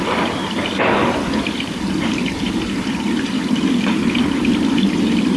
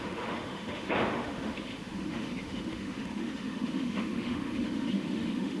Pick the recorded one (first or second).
first